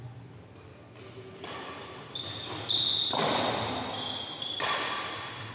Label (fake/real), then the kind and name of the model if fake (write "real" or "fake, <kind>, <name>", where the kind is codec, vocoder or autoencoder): real